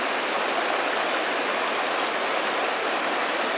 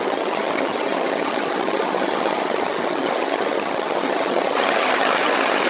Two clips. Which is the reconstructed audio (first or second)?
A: second